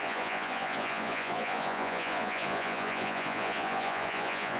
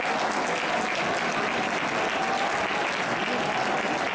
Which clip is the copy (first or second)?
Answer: first